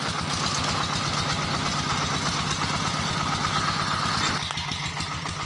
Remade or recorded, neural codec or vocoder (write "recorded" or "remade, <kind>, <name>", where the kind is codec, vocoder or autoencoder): recorded